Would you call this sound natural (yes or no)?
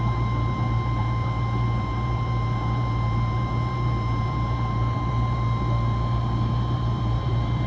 no